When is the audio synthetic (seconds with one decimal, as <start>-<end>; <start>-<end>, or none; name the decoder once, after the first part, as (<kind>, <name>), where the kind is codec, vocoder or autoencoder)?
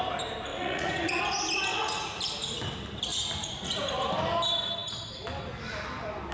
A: 0.5-1.2 (vocoder, Vocos); 1.7-2.2; 3.1-3.6